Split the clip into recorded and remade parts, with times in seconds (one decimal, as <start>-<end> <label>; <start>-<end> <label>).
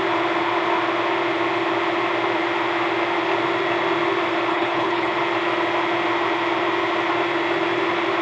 0.0-4.5 recorded; 4.5-5.1 remade; 5.1-8.2 recorded